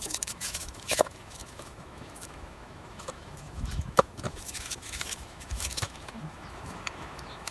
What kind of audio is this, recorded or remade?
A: remade